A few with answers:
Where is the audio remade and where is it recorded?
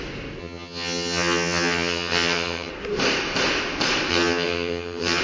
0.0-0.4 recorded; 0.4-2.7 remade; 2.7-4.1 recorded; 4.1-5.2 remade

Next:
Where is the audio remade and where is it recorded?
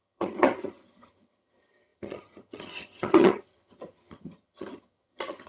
0.0-5.5 remade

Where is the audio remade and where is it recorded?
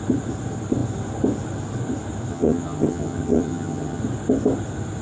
0.0-2.3 recorded; 2.3-4.0 remade; 4.0-5.0 recorded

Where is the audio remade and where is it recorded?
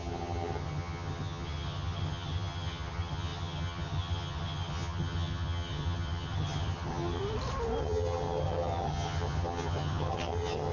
0.0-7.2 remade; 7.2-7.8 recorded; 7.8-10.7 remade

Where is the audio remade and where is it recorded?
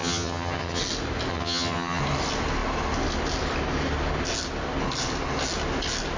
0.0-0.8 remade; 0.8-1.3 recorded; 1.3-2.0 remade; 2.0-6.2 recorded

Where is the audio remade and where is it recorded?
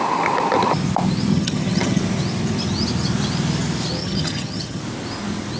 0.0-1.3 recorded; 1.3-2.0 remade; 2.0-4.0 recorded; 4.0-4.8 remade; 4.8-5.6 recorded